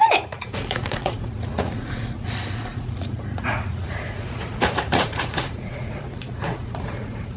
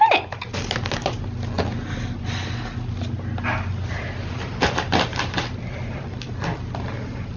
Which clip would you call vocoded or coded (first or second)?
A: first